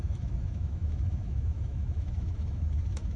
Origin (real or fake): fake